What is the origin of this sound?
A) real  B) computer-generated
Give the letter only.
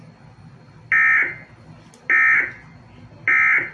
A